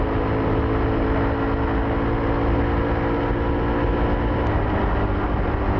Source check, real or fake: real